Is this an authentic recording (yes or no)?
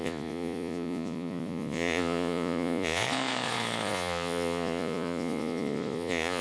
no